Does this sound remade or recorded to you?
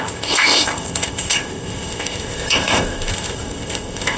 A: remade